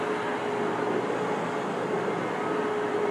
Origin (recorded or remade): recorded